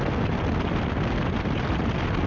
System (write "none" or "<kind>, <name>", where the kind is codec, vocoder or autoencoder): none